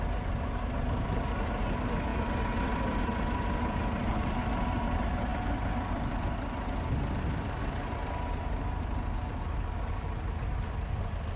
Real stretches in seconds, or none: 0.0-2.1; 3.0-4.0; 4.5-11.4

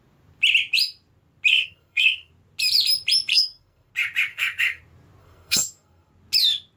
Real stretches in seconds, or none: 0.0-1.5; 2.3-3.3; 3.9-4.3; 4.8-5.2; 6.1-6.8

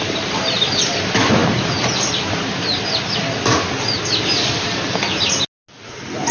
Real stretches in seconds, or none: 0.0-6.3

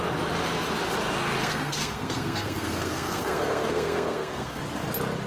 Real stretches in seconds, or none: 0.0-1.4; 4.6-5.3

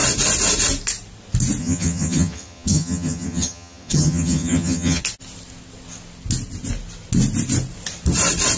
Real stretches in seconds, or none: 0.0-1.6; 5.0-8.6

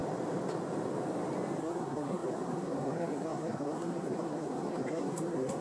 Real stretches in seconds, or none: 0.0-1.6

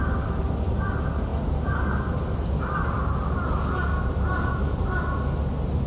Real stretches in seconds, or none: 0.0-4.5; 5.0-5.9

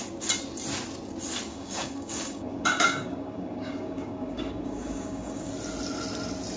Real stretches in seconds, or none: 0.0-1.5; 5.5-6.6